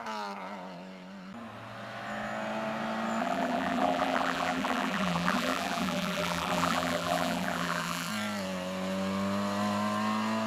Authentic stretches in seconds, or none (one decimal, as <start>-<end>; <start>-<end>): 0.0-3.2; 8.1-10.5